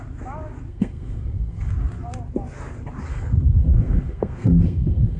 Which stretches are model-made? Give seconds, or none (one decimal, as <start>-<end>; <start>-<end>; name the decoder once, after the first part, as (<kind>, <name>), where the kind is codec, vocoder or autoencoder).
0.7-1.7 (codec, SNAC); 3.1-5.2